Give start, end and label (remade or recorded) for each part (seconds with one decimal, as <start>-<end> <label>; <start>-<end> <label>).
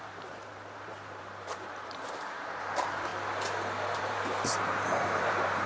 0.0-3.1 remade; 3.1-4.0 recorded; 4.0-5.7 remade